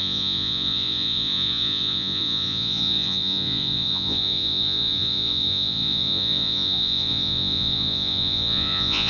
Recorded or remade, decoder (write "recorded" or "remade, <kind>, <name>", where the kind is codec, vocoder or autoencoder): remade, vocoder, Vocos